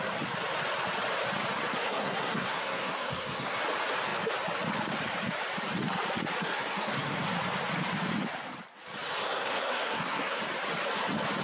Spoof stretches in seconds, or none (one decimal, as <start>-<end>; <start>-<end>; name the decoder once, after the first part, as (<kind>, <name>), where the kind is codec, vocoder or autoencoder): 1.7-3.6 (codec, SNAC); 6.4-7.2; 9.2-10.4